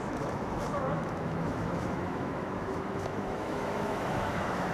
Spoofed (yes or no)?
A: yes